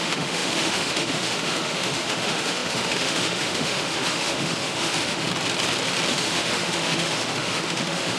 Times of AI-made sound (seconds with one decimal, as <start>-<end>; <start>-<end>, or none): 0.0-5.3; 6.1-8.2